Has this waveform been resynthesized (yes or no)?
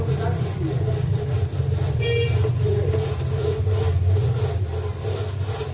no